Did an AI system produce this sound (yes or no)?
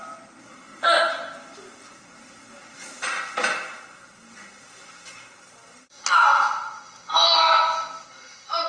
no